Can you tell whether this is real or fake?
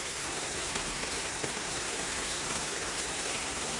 fake